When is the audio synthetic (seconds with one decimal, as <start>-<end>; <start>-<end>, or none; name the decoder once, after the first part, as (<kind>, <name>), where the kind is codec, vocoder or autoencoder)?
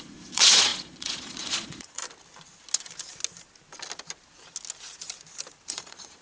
0.0-2.0 (vocoder, Vocos); 5.7-6.2